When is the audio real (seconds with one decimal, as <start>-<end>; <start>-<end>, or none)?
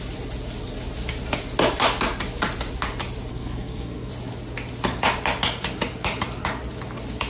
0.0-3.3; 4.1-7.3